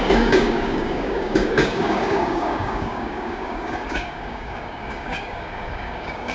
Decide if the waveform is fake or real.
fake